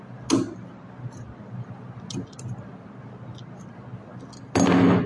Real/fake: real